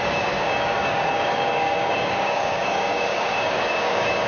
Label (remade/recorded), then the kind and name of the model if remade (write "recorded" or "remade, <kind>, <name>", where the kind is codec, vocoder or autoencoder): remade, codec, DAC